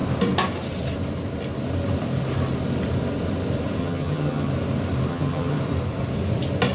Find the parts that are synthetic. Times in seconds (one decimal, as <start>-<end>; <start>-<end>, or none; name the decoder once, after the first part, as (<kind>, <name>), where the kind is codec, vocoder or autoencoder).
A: 3.8-4.5 (vocoder, HiFi-GAN); 5.1-5.6